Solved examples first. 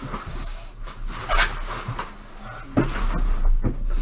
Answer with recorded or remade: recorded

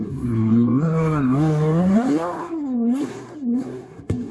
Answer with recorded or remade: remade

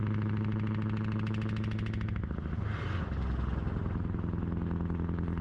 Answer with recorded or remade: recorded